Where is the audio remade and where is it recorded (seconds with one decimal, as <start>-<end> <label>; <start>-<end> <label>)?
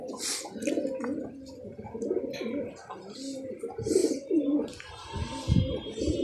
0.0-4.0 recorded; 4.0-6.2 remade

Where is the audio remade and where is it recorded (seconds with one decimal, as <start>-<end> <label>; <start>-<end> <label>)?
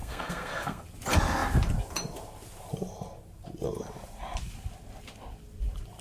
0.0-0.8 remade; 0.8-6.0 recorded